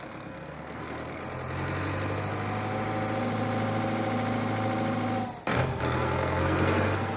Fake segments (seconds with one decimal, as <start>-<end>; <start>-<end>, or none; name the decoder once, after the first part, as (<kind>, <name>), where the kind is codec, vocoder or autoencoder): 0.0-1.2 (codec, SNAC); 5.5-7.2